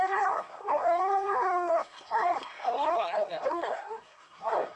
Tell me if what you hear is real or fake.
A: fake